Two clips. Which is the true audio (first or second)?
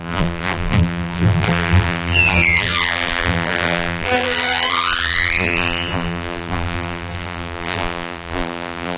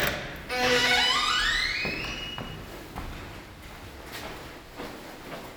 second